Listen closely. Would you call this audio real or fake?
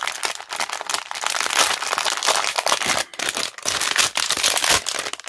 real